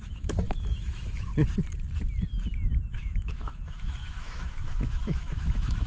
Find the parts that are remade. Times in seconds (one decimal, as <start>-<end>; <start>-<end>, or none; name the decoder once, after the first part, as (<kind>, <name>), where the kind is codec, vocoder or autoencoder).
0.0-1.3 (autoencoder, DAC-VAE); 2.9-5.9